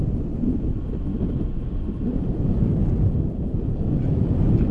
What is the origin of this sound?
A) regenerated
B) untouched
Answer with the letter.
B